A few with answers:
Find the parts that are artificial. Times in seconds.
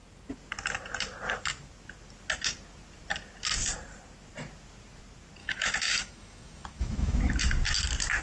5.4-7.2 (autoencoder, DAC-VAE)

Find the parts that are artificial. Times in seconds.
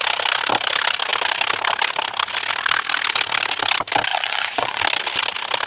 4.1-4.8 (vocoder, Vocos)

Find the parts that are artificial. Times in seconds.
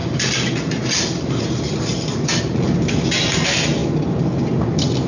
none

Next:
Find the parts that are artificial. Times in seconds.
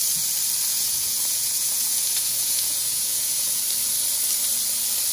0.7-3.6 (vocoder, Vocos)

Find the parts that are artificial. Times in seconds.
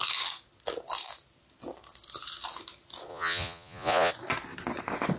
3.1-4.1 (vocoder, Vocos)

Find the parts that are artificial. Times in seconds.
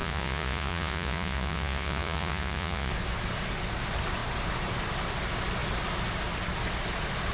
0.0-2.9 (vocoder, Vocos)